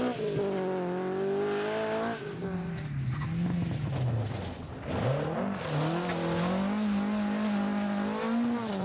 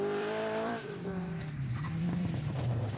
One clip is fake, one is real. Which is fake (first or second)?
second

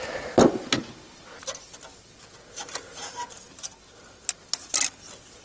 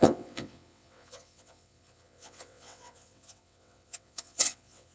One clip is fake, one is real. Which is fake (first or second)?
second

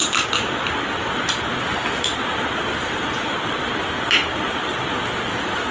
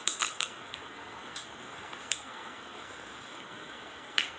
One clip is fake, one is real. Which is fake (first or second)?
second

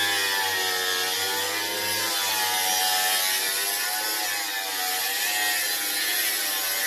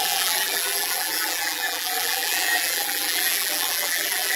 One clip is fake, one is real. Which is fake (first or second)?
second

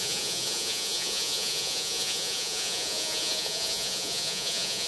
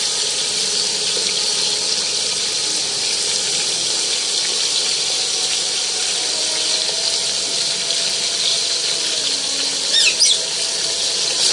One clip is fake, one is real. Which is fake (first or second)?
first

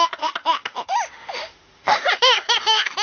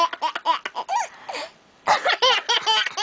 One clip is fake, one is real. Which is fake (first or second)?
first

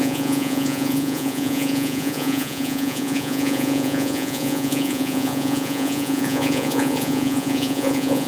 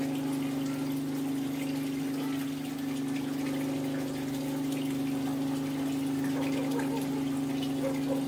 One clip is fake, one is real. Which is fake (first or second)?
first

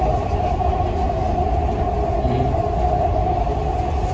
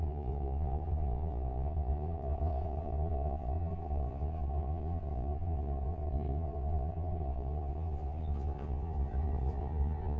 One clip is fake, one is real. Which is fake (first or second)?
second